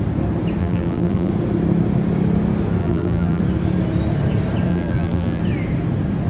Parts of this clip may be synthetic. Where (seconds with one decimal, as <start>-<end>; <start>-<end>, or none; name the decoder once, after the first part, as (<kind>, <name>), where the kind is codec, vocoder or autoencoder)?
0.6-1.3 (vocoder, BigVGAN v2); 2.8-3.4; 4.7-5.4